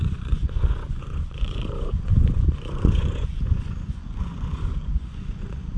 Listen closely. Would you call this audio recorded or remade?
remade